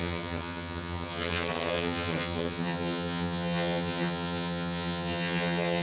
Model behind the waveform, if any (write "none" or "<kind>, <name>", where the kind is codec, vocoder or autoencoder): vocoder, HiFi-GAN